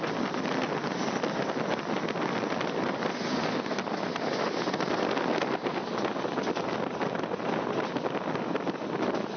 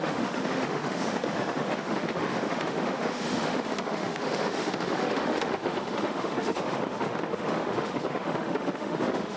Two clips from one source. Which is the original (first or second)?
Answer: first